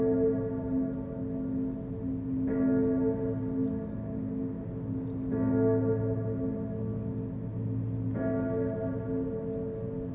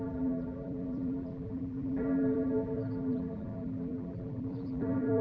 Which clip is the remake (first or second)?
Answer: second